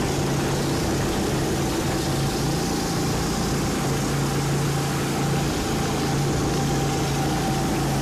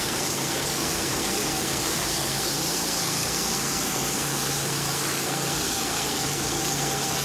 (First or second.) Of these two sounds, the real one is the first